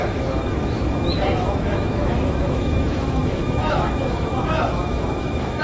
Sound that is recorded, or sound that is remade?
remade